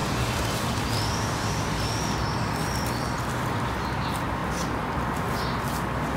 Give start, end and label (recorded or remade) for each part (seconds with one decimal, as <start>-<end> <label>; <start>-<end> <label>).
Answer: 0.0-1.4 remade; 1.4-6.2 recorded